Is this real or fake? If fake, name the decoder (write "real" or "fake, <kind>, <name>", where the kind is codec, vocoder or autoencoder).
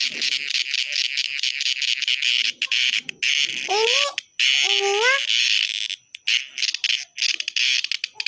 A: real